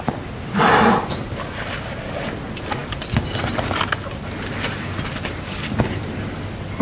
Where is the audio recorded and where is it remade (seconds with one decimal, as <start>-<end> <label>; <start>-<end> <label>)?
0.0-6.8 recorded